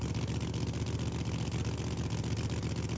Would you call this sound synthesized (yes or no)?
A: no